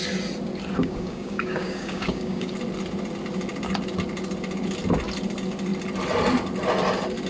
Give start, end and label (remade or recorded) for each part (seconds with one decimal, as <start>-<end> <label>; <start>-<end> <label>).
0.0-0.8 recorded; 0.8-2.5 remade; 2.5-7.3 recorded